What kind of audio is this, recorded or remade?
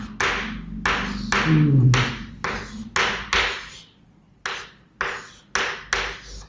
recorded